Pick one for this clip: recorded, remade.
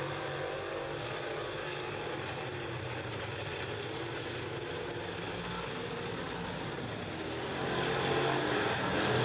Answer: recorded